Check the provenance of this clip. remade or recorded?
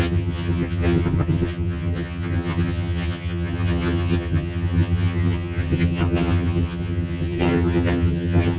remade